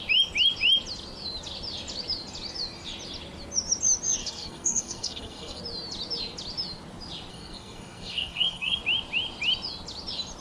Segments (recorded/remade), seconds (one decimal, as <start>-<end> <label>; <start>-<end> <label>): 0.0-4.2 recorded; 4.2-5.6 remade; 5.6-7.3 recorded; 7.3-8.8 remade; 8.8-10.4 recorded